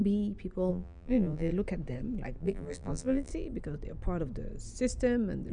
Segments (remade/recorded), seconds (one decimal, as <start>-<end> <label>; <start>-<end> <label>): 0.0-0.7 recorded; 0.7-1.5 remade; 1.5-2.4 recorded; 2.4-3.3 remade; 3.3-5.5 recorded